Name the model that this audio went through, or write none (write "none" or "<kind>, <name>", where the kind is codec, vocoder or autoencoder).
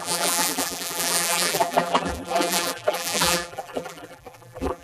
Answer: vocoder, BigVGAN v2